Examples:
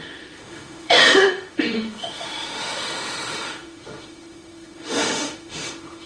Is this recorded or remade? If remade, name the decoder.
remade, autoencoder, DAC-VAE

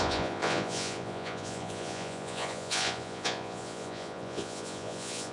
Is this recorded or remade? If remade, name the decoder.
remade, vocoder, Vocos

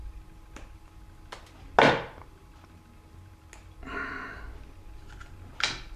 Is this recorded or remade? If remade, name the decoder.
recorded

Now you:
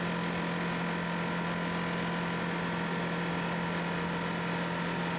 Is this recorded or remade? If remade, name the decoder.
recorded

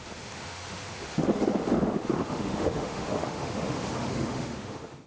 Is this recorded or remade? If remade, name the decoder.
remade, autoencoder, DAC-VAE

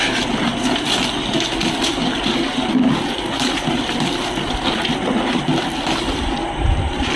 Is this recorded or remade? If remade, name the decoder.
recorded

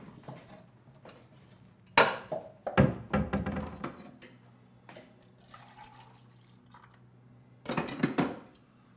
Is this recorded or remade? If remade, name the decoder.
recorded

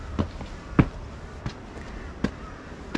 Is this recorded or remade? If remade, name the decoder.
recorded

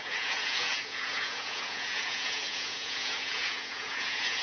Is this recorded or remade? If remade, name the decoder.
remade, vocoder, Vocos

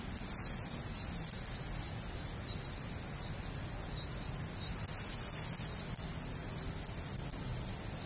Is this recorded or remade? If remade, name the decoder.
recorded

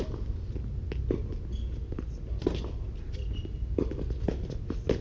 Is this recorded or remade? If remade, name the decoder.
recorded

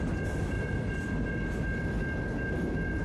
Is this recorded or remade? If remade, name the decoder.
recorded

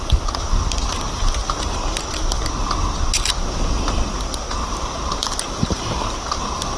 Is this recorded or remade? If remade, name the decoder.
recorded